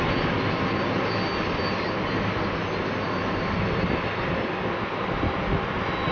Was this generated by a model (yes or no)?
no